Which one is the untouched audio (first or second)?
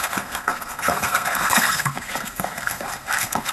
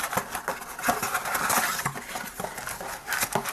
second